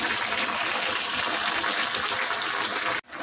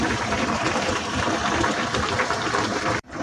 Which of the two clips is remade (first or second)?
second